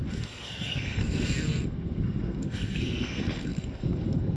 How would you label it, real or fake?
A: fake